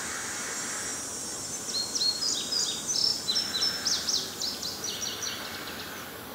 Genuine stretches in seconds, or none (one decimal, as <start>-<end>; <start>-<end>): 0.0-6.3